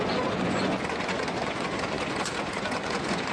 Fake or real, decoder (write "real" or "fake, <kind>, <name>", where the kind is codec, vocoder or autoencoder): fake, vocoder, Vocos